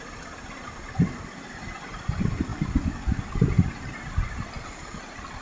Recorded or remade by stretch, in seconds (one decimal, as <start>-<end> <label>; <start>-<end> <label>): 0.0-5.4 recorded